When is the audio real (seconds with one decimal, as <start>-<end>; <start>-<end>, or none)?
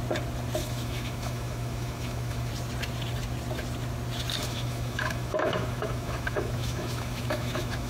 0.0-0.6; 2.5-4.4